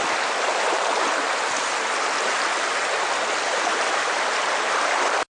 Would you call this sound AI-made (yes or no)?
no